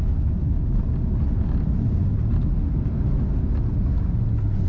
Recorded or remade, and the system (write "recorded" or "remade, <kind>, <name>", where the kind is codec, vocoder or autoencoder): recorded